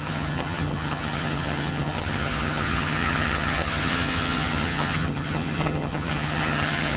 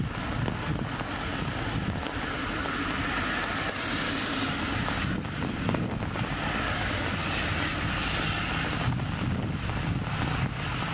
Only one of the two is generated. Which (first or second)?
first